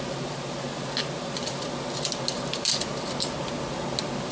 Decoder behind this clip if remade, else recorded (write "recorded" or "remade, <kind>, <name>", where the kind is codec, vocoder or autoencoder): recorded